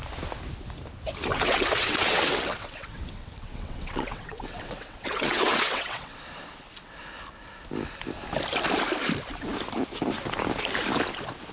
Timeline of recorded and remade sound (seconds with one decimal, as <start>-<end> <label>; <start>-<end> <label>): 0.0-1.3 recorded; 1.3-6.2 remade; 6.2-11.5 recorded